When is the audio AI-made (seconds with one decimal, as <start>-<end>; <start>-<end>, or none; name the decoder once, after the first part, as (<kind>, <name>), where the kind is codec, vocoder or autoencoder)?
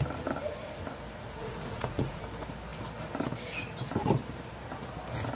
1.4-2.2 (vocoder, Vocos)